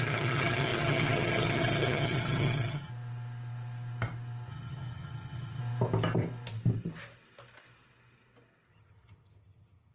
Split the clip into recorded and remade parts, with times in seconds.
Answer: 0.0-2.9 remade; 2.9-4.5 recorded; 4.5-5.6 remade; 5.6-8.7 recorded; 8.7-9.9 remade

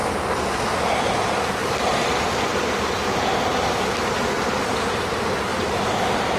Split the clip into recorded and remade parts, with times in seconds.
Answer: 0.0-1.3 remade; 1.3-2.5 recorded; 2.5-3.7 remade; 3.7-5.5 recorded; 5.5-6.4 remade

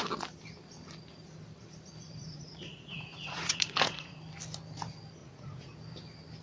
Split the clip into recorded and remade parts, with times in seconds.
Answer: 0.0-2.2 recorded; 2.2-4.2 remade; 4.2-5.2 recorded; 5.2-5.8 remade; 5.8-6.4 recorded